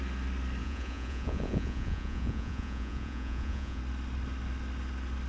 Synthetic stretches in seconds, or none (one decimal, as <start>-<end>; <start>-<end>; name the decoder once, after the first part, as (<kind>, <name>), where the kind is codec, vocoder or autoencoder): 0.6-3.8 (vocoder, Vocos)

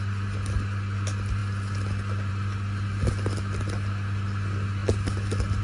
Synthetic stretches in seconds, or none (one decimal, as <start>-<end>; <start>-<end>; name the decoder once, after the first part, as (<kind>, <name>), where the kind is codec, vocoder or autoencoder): none

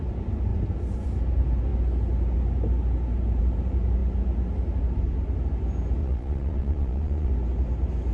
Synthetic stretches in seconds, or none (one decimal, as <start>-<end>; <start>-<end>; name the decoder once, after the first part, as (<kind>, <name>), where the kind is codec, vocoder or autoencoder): 6.0-7.3 (vocoder, Vocos)

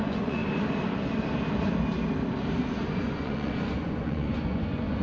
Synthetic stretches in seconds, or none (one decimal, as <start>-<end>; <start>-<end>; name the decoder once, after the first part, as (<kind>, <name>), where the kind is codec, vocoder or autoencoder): 0.0-0.4 (vocoder, Vocos); 3.0-5.0